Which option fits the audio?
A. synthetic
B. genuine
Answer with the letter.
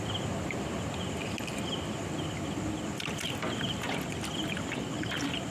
B